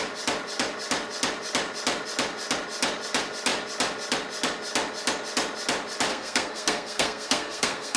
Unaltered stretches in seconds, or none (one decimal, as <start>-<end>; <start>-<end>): 0.0-6.1